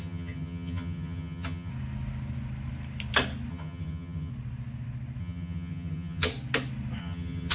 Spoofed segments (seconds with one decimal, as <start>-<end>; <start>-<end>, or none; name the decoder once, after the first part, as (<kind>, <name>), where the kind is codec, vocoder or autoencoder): 0.0-1.7 (vocoder, HiFi-GAN); 3.5-4.3; 5.2-6.3; 7.0-7.5